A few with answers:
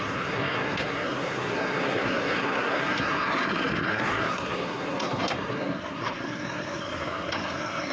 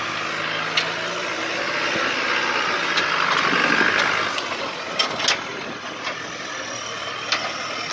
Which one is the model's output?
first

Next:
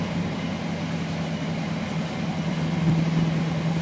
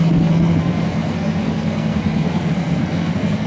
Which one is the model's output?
second